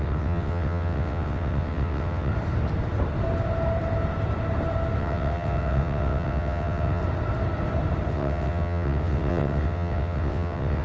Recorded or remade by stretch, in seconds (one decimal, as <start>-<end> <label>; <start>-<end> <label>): 0.0-2.3 remade; 2.3-5.0 recorded; 5.0-7.0 remade; 7.0-8.1 recorded; 8.1-10.8 remade